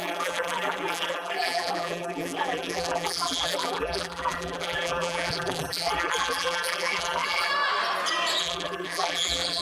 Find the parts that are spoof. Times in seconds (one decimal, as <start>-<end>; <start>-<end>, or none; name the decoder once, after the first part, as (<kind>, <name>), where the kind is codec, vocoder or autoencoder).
0.0-7.5 (vocoder, BigVGAN v2); 8.4-9.6